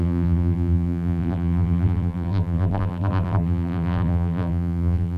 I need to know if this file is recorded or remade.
remade